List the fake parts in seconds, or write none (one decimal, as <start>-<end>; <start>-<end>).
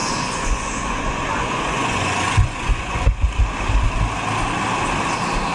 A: 0.0-3.3